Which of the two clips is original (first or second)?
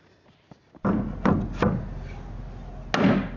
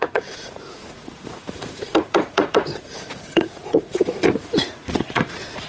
first